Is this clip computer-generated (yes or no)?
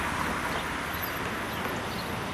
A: no